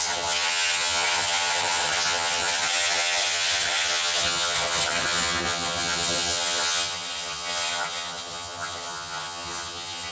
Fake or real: fake